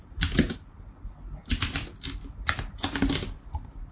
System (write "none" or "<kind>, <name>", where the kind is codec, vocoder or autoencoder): none